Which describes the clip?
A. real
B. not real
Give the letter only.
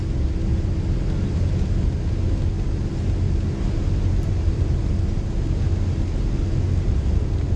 A